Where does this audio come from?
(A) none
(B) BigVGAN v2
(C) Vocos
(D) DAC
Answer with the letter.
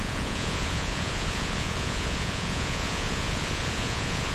C